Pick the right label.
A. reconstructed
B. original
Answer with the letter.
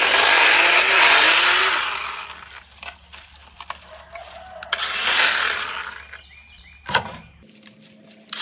B